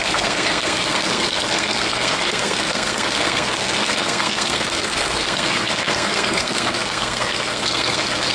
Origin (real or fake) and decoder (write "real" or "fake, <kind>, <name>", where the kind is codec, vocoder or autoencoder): fake, codec, SNAC